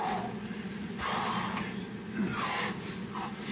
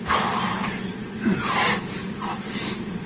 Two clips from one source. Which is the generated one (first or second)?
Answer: second